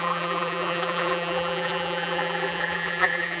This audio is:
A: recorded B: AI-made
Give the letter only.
B